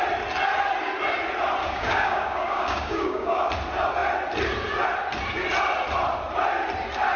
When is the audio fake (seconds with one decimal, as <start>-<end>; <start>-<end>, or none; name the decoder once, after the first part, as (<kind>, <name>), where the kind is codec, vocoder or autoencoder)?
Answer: 1.6-3.5 (codec, DAC)